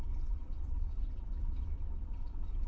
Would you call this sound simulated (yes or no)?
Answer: yes